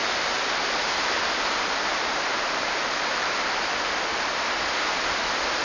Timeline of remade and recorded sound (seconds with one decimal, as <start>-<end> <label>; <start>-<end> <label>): 0.0-3.4 remade; 3.4-5.6 recorded